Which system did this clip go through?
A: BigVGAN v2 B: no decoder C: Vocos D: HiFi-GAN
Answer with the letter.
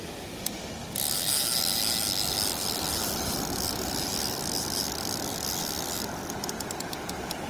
B